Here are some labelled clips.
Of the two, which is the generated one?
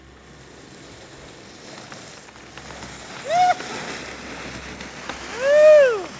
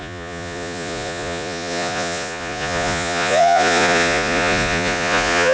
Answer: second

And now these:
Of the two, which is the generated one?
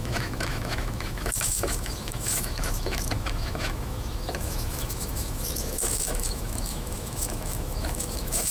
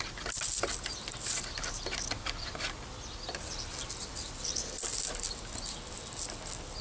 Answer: first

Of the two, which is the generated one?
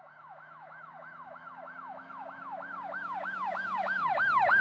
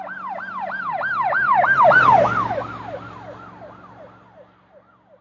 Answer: first